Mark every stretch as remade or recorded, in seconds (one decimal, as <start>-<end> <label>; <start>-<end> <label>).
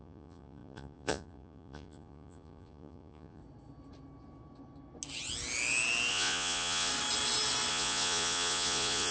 0.0-3.4 remade; 3.4-6.1 recorded; 6.1-6.9 remade; 6.9-7.7 recorded; 7.7-9.1 remade